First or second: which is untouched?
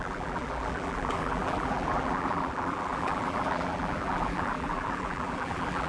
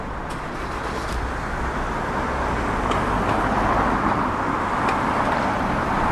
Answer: second